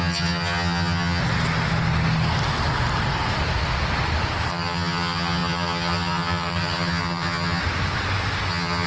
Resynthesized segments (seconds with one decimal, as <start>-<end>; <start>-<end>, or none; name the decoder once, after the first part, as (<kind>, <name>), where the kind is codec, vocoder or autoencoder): 0.0-1.2 (vocoder, HiFi-GAN); 4.5-7.6; 8.5-8.9